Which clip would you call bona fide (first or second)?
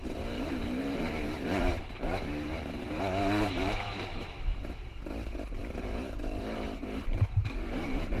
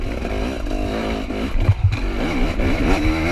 second